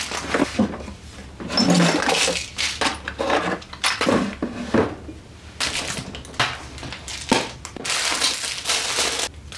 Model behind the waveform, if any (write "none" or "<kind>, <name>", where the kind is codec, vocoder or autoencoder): none